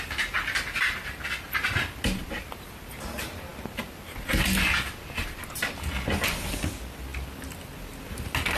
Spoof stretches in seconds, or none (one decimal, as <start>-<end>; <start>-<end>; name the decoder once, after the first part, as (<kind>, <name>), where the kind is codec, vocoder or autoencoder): none